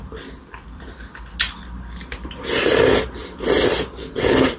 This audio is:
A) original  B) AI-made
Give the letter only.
A